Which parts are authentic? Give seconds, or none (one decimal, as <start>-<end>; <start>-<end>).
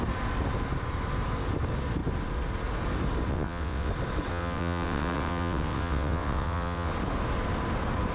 0.0-3.3; 3.9-4.3; 6.9-8.1